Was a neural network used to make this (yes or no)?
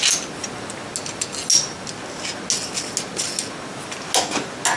no